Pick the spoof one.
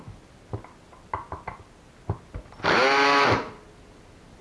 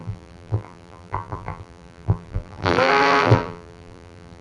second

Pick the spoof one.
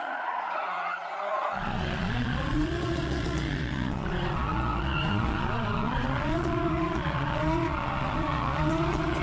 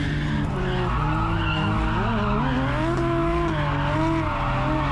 first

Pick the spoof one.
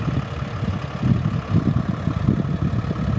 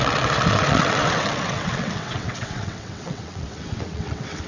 second